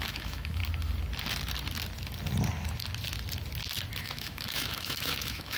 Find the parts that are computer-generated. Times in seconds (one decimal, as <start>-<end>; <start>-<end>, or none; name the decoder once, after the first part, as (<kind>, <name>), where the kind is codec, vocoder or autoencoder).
0.0-0.6 (autoencoder, DAC-VAE); 4.0-5.6